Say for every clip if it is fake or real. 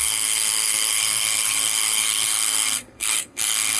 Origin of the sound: fake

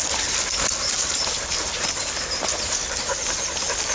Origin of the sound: real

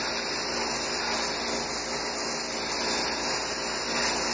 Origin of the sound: real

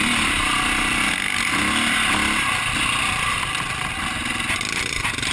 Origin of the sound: real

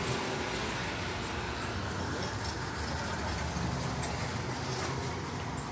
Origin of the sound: real